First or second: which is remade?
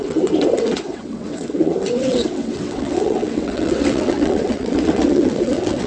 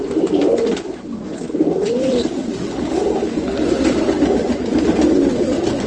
first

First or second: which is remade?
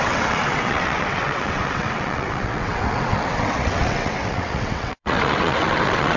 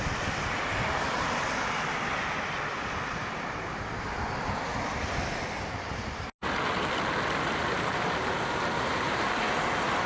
first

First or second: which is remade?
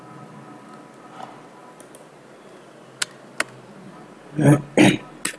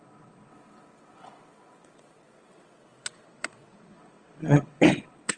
second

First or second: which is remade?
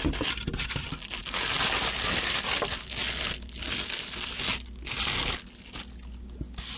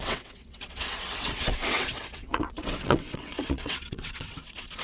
second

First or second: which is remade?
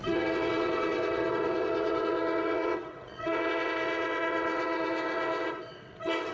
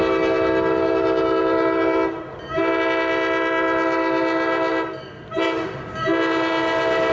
first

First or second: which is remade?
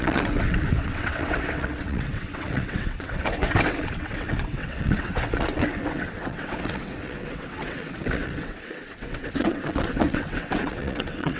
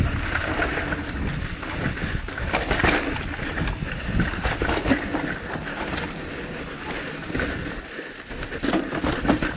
first